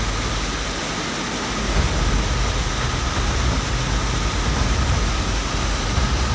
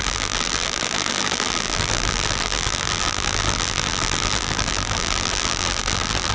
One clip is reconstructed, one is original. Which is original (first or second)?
first